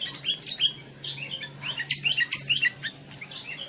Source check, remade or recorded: recorded